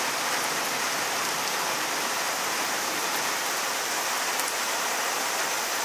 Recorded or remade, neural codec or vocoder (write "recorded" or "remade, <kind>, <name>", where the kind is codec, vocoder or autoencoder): remade, vocoder, BigVGAN v2